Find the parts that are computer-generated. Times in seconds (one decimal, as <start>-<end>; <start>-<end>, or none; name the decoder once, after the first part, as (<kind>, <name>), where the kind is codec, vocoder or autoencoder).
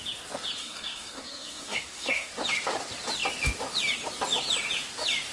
0.6-2.3 (codec, SNAC)